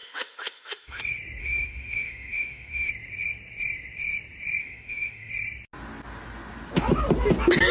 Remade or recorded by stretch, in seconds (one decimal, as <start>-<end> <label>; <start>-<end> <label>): 0.0-1.0 remade; 1.0-1.4 recorded; 1.4-2.9 remade; 2.9-4.6 recorded; 4.6-5.3 remade; 5.3-7.7 recorded